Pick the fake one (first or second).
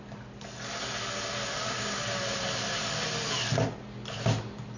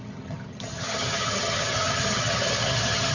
second